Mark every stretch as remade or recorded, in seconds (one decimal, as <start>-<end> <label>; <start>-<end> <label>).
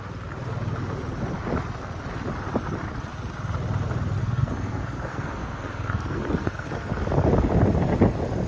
0.0-4.2 recorded; 4.2-6.9 remade; 6.9-8.5 recorded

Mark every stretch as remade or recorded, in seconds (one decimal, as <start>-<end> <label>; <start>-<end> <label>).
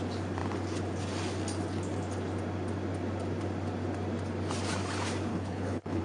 0.0-5.3 recorded; 5.3-6.0 remade